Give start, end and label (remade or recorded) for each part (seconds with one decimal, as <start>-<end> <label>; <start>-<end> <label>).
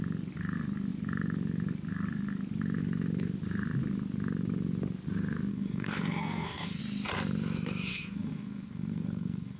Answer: 0.0-5.5 recorded; 5.5-6.8 remade; 6.8-7.9 recorded; 7.9-9.6 remade